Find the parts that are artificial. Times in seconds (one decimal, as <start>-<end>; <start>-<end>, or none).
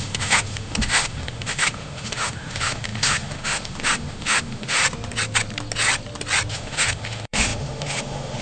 0.0-4.8; 6.5-8.4